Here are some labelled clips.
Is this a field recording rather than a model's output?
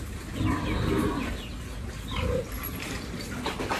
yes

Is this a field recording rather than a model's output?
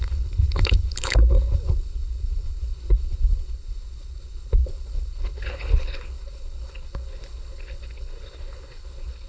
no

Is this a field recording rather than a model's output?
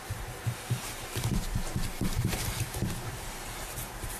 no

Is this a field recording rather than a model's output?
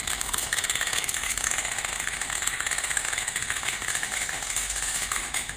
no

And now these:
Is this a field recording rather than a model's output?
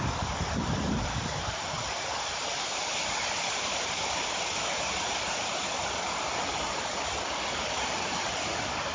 yes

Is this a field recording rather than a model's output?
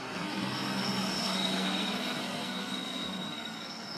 no